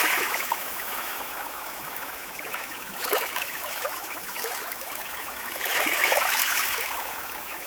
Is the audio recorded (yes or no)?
no